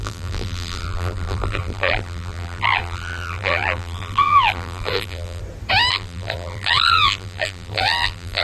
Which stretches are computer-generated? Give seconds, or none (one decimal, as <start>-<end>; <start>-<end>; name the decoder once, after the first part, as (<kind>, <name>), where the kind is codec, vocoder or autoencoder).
0.0-5.4 (vocoder, BigVGAN v2); 5.9-8.4